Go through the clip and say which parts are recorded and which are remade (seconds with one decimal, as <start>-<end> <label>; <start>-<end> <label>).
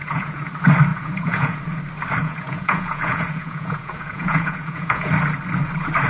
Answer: 0.0-0.5 remade; 0.5-0.9 recorded; 0.9-1.6 remade; 1.6-2.2 recorded; 2.2-5.1 remade; 5.1-6.1 recorded